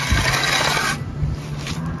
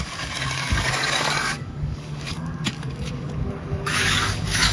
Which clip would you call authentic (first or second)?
first